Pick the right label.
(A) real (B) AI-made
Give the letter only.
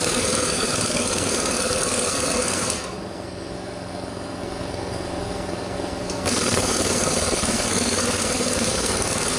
B